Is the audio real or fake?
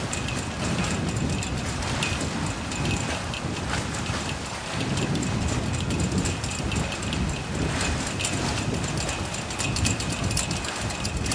real